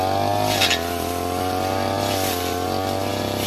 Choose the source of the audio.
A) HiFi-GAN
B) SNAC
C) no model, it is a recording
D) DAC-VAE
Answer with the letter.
C